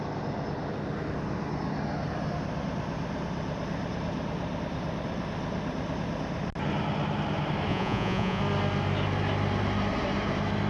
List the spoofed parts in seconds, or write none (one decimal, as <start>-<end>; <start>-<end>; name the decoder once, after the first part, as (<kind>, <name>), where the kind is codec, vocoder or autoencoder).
7.7-8.4 (vocoder, Vocos)